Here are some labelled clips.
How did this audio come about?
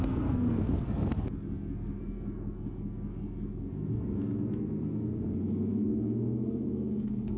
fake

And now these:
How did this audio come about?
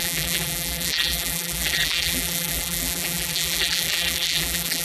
fake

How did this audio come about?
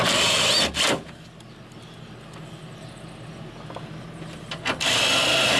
real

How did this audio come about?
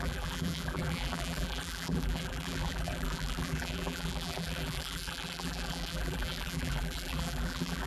fake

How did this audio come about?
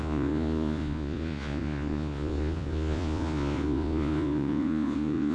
fake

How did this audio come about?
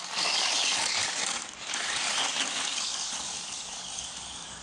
fake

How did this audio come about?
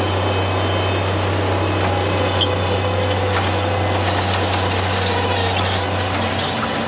real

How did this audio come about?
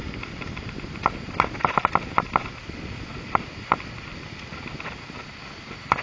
real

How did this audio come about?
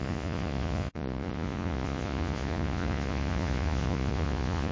fake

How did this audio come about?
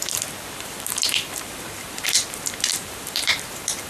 fake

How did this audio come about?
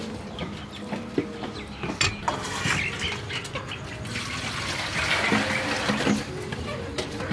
real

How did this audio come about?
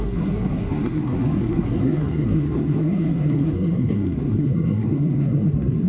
fake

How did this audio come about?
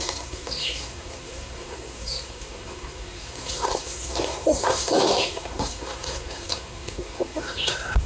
fake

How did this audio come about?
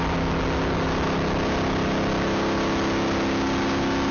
real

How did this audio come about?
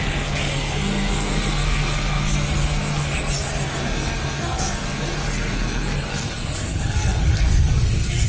fake